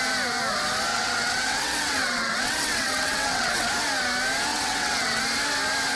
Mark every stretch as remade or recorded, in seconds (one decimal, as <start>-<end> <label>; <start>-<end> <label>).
0.0-0.9 recorded; 0.9-3.7 remade; 3.7-4.5 recorded; 4.5-5.2 remade; 5.2-6.0 recorded